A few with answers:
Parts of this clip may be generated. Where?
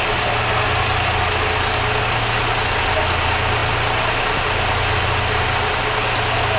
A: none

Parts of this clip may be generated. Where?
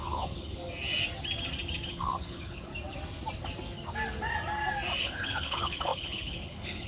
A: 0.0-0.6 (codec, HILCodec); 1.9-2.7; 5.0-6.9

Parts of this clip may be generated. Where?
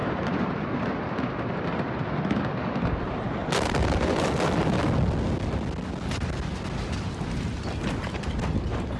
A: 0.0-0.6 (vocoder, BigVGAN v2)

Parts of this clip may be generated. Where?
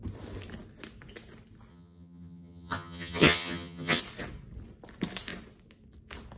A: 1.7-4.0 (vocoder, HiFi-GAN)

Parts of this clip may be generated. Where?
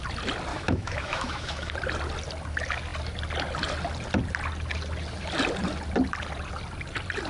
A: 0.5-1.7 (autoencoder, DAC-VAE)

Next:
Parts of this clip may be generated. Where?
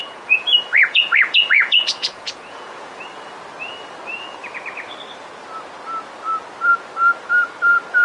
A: 0.0-3.0 (vocoder, Vocos)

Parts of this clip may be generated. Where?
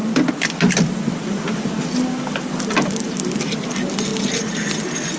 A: none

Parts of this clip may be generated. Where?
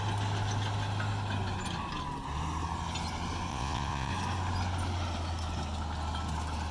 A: 3.5-4.1 (vocoder, Vocos)